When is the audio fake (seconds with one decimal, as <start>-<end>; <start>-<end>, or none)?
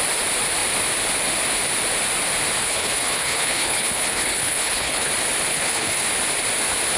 2.6-5.1; 5.5-6.1